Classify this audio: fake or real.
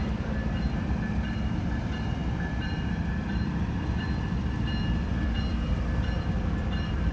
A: fake